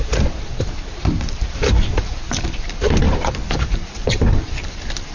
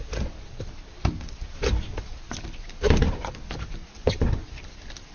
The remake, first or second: first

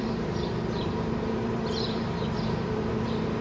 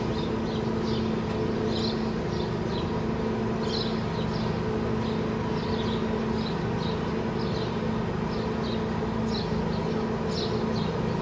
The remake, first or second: first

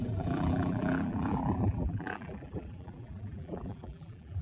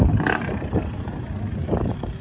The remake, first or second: first